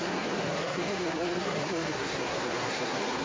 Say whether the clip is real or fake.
fake